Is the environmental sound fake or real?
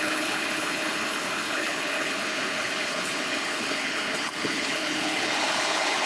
fake